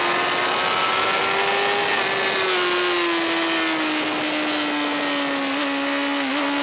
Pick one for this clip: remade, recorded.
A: recorded